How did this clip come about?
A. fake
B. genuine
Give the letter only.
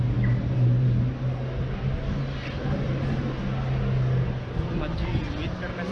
B